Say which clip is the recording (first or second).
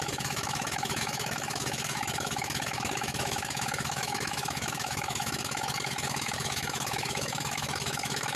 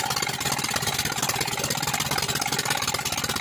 second